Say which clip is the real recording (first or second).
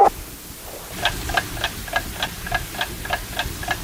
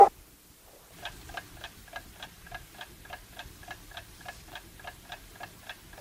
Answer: first